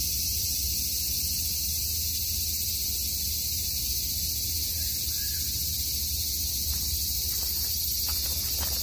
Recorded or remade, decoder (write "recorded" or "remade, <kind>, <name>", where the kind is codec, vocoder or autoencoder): recorded